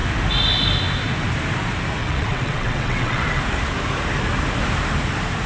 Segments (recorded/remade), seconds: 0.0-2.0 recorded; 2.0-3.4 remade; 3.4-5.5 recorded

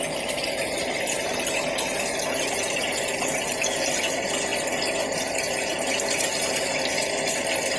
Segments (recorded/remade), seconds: 0.0-7.8 recorded

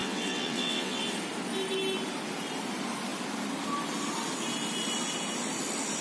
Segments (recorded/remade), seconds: 0.0-1.0 remade; 1.0-6.0 recorded

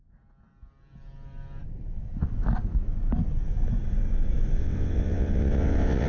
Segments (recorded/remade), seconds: 0.0-4.6 recorded; 4.6-6.1 remade

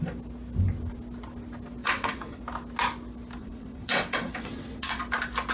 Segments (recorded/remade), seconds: 0.0-1.8 recorded; 1.8-2.4 remade; 2.4-3.4 recorded; 3.4-5.0 remade; 5.0-5.5 recorded

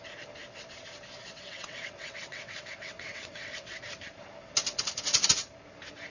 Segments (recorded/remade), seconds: 0.0-1.2 recorded; 1.2-3.8 remade; 3.8-6.1 recorded

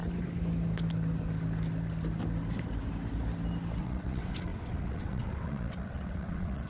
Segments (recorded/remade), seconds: 0.0-3.8 recorded; 3.8-6.7 remade

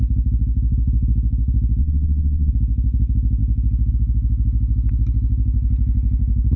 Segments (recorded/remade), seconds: 0.0-1.8 recorded; 1.8-2.5 remade; 2.5-6.6 recorded